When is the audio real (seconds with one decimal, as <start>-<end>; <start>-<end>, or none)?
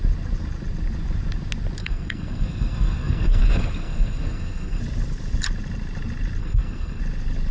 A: 0.0-1.8; 4.8-6.4; 7.0-7.5